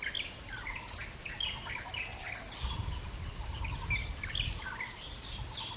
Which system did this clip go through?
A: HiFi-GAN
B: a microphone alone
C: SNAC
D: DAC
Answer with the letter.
B